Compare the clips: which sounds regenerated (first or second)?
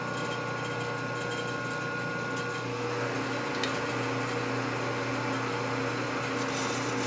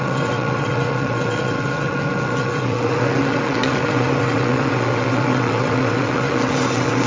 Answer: second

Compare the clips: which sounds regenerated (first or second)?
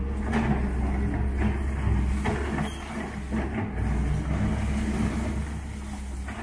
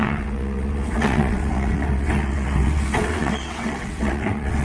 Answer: second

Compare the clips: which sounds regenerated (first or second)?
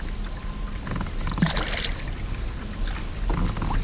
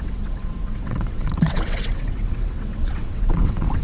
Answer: second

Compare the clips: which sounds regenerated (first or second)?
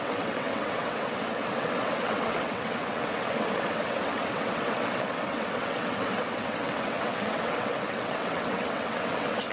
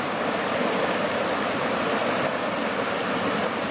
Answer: first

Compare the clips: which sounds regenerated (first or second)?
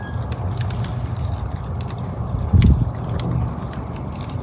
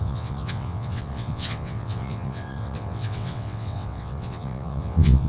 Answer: second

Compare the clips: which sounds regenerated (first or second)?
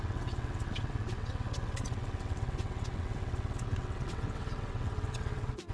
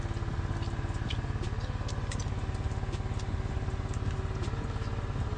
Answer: first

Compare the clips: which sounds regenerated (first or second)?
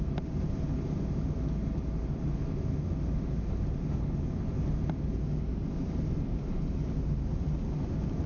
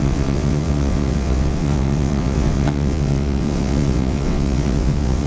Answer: second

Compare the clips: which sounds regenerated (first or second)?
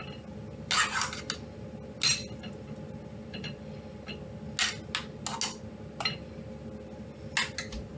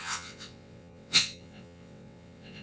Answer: second